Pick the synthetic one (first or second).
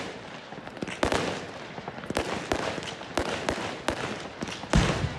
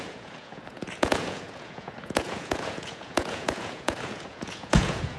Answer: second